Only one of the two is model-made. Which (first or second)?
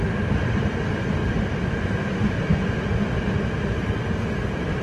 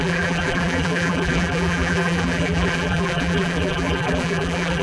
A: second